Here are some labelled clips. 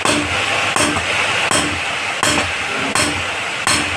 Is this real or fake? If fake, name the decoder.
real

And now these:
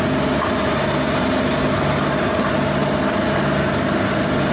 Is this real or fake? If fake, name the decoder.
real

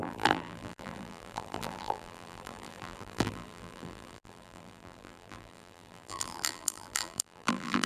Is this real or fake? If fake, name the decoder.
fake, vocoder, BigVGAN v2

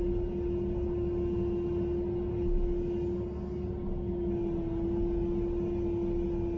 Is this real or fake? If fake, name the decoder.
real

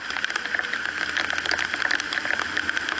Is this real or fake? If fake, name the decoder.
real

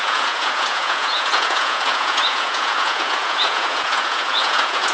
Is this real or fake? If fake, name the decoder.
fake, vocoder, Vocos